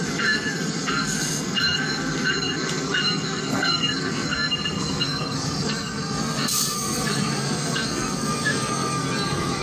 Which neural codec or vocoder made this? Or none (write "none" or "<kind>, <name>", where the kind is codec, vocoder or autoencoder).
codec, SNAC